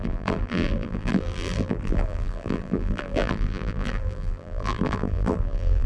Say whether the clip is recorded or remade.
remade